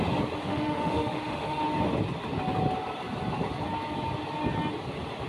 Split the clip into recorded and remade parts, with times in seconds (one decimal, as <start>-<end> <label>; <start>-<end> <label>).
0.0-0.4 recorded; 0.4-1.6 remade; 1.6-5.3 recorded